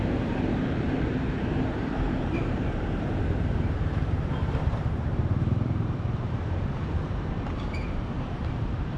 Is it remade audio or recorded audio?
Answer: remade